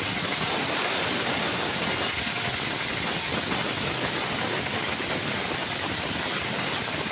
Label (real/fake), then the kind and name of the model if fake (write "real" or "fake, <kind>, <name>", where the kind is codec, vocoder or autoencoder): real